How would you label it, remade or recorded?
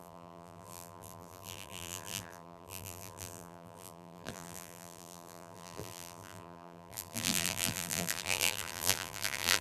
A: remade